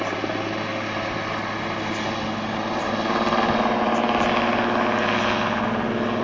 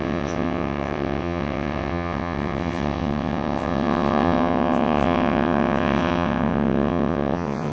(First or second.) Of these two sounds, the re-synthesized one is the second